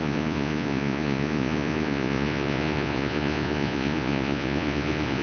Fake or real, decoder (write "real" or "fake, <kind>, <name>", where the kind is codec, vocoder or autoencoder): fake, vocoder, Vocos